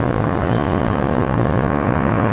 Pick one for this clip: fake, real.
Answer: fake